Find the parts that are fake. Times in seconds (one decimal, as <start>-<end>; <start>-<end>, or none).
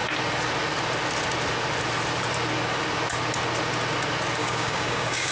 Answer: 4.4-5.3